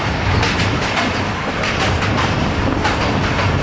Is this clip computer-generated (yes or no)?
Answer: no